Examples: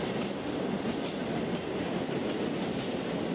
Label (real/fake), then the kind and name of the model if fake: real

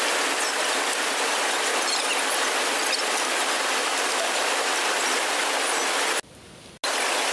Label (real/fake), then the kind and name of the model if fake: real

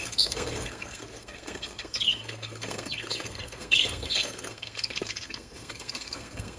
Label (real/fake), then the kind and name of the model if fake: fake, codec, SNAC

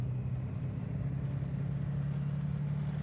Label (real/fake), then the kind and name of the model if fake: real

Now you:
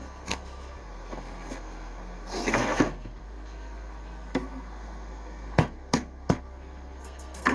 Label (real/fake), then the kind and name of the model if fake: fake, codec, SNAC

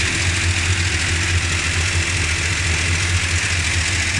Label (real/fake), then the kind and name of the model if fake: real